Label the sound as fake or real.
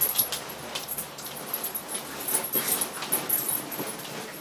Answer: real